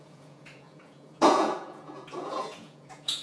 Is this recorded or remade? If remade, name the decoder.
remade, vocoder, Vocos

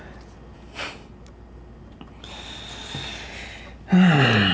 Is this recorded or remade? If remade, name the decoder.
recorded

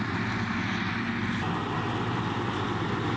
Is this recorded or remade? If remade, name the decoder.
recorded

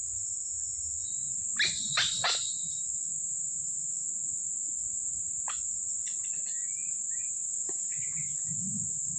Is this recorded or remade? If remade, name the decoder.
recorded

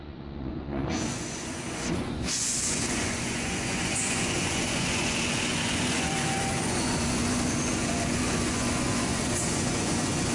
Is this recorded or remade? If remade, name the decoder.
remade, vocoder, Vocos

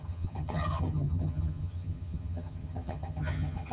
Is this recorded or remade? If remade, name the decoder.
remade, vocoder, HiFi-GAN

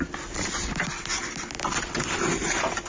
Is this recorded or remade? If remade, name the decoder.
recorded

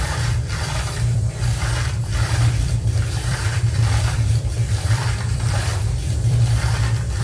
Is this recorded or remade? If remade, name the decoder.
remade, vocoder, BigVGAN v2